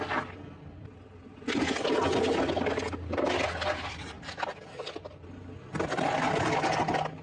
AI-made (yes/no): no